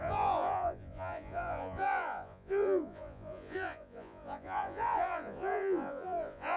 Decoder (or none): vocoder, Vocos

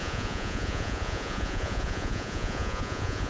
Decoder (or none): vocoder, Vocos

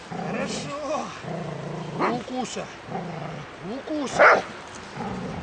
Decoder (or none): none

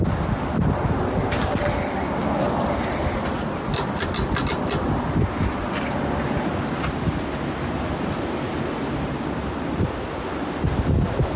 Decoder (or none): none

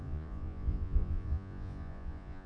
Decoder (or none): vocoder, Vocos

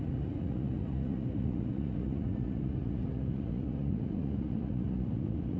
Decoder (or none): vocoder, Vocos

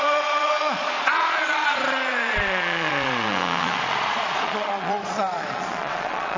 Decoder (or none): vocoder, Vocos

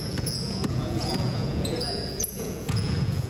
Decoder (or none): vocoder, Vocos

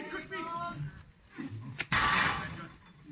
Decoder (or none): none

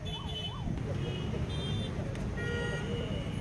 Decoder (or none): none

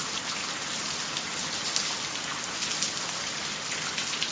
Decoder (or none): none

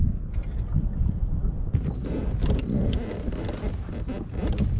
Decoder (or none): none